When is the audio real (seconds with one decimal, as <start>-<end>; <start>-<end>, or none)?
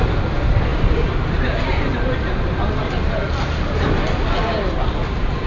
0.0-5.5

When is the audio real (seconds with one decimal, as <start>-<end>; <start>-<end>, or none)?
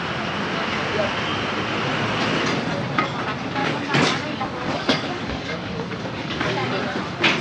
0.0-3.6; 6.8-7.4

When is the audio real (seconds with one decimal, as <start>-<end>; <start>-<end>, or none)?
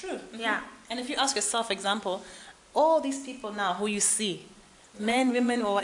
0.0-4.4